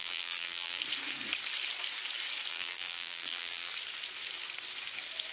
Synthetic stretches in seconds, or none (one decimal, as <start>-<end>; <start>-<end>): 0.0-0.8; 2.5-3.7